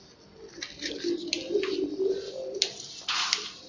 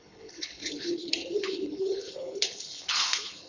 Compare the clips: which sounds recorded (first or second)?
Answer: first